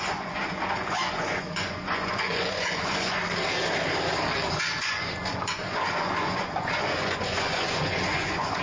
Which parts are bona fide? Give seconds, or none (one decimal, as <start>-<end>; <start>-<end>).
3.2-4.5